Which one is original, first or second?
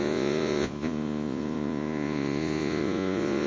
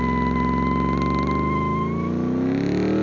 second